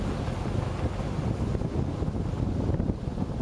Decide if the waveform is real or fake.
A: real